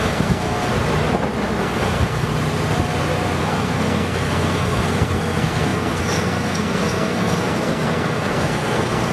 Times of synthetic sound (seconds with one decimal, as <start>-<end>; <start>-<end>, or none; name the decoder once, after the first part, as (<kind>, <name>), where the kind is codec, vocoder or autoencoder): 0.0-0.7 (codec, SNAC); 1.6-2.3; 3.4-9.1